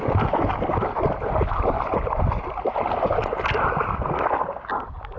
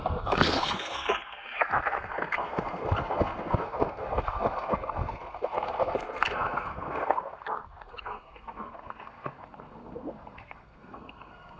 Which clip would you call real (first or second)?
first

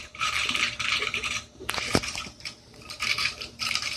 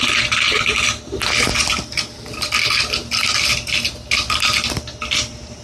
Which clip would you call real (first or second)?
second